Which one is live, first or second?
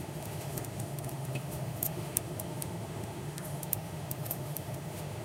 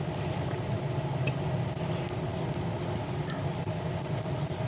second